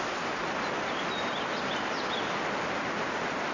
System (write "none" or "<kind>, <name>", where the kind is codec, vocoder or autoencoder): none